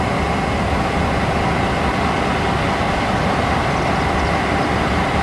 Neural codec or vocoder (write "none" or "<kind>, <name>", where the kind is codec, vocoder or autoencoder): none